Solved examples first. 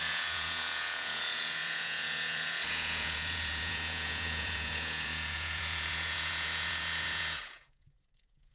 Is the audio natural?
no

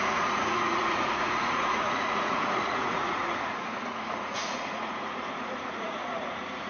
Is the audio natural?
no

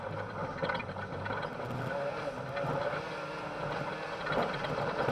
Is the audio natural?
yes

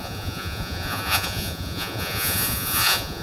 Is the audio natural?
no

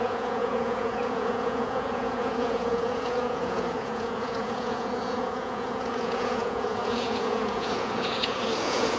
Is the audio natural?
no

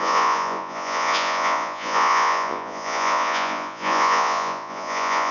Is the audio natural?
no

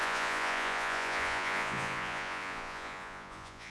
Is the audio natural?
no